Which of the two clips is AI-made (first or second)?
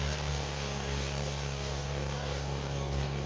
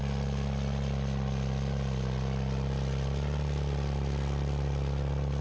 first